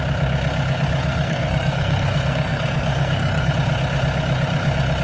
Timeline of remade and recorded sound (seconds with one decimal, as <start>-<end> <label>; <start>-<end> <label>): 0.0-1.0 recorded; 1.0-3.5 remade; 3.5-5.0 recorded